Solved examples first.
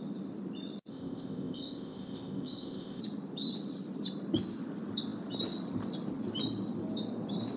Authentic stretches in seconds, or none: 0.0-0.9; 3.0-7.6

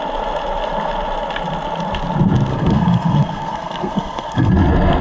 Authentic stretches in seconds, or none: 0.0-2.5; 4.5-5.0

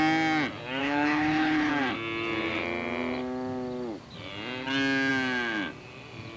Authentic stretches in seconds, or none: 0.0-0.8; 1.7-6.4